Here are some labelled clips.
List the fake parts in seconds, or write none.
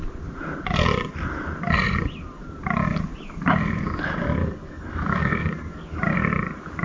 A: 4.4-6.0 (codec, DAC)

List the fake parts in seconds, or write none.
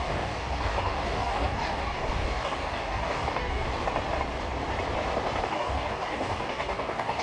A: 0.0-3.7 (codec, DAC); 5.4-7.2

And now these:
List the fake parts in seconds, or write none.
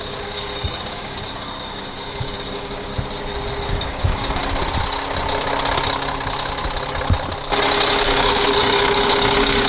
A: 0.0-2.9 (codec, DAC); 3.6-4.4; 8.0-9.7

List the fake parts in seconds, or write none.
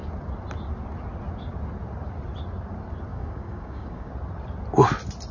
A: 3.1-4.1 (codec, DAC)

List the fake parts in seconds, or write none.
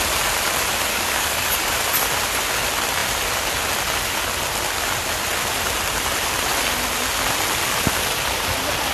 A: 0.9-1.8 (codec, DAC)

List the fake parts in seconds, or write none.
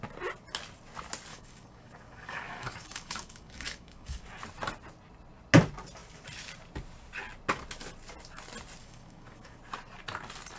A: 1.3-4.2 (codec, DAC); 8.8-9.6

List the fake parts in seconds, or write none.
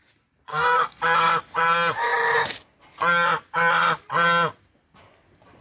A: 0.5-1.0 (codec, DAC)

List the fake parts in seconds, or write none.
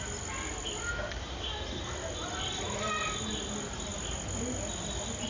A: none